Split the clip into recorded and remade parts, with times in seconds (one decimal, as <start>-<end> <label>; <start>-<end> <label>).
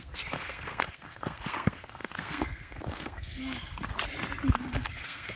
0.0-3.9 remade; 3.9-4.5 recorded; 4.5-5.4 remade